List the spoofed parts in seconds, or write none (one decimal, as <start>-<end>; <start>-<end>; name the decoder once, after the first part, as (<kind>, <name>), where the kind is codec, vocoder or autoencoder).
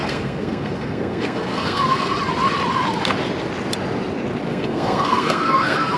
0.0-2.1 (codec, SNAC); 4.5-6.0